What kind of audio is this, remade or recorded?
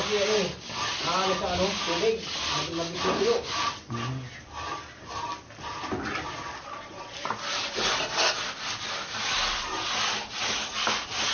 recorded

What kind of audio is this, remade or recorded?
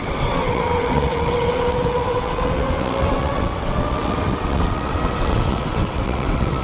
remade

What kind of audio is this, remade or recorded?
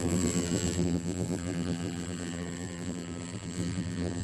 remade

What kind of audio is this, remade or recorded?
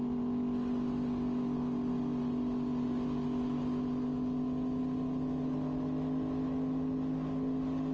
recorded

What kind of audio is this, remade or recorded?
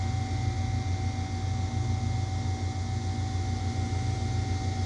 recorded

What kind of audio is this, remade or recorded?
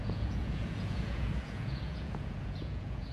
remade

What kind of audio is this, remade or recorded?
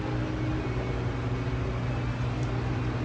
recorded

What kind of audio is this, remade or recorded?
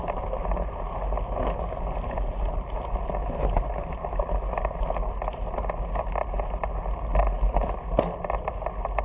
recorded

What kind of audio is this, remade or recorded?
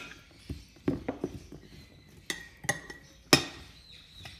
recorded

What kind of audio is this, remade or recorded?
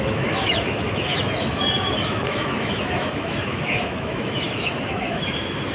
remade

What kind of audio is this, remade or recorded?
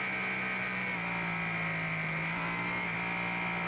recorded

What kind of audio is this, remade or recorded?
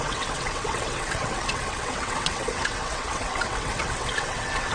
remade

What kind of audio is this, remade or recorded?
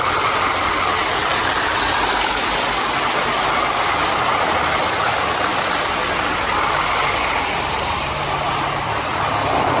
recorded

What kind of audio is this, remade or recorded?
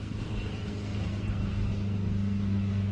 remade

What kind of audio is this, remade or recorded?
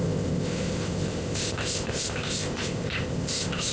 remade